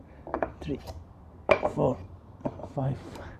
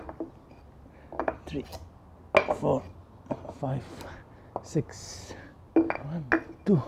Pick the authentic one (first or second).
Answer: second